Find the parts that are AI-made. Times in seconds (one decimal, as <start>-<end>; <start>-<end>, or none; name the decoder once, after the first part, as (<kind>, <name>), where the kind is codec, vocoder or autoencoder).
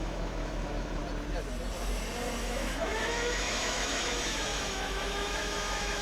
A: 0.0-1.0 (autoencoder, DAC-VAE); 2.4-6.0